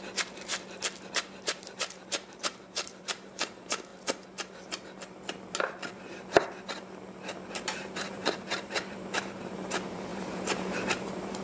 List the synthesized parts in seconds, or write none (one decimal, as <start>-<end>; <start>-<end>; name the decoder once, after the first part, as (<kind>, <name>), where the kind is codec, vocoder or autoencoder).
0.0-0.5 (vocoder, BigVGAN v2); 1.1-3.9; 7.5-11.4